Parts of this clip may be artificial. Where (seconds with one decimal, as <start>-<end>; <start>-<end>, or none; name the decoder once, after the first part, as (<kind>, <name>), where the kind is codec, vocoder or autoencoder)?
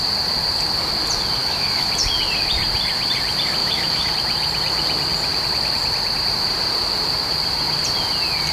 1.4-1.9 (autoencoder, DAC-VAE); 3.6-4.1